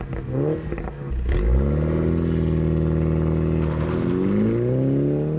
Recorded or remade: recorded